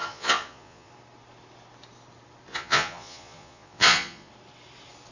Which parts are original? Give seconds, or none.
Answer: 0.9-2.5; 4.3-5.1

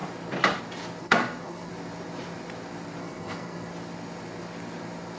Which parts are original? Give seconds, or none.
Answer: 0.0-1.0; 1.7-3.0; 3.7-5.2